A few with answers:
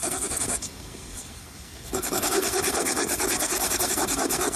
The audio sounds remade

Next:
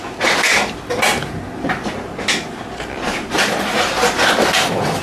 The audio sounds recorded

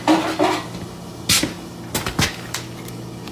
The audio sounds recorded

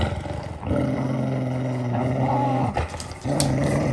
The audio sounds recorded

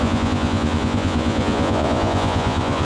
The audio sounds remade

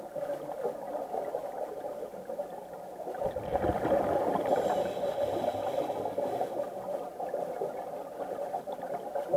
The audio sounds recorded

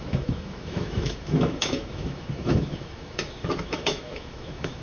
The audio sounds remade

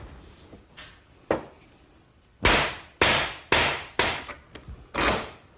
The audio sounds recorded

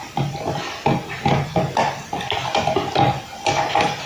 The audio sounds recorded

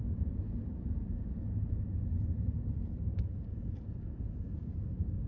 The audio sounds remade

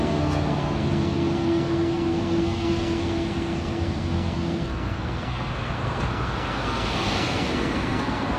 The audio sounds remade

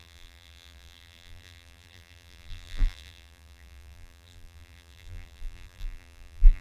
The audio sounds remade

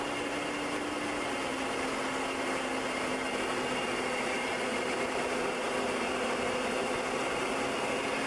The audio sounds recorded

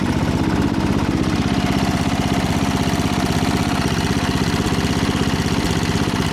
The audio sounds recorded